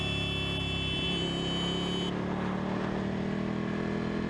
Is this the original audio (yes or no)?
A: yes